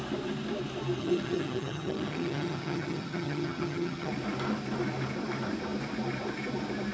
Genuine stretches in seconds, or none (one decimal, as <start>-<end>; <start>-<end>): 0.0-1.0; 4.1-6.9